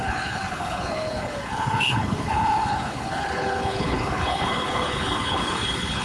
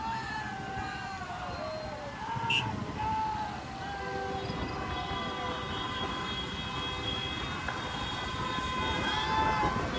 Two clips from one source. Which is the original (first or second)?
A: second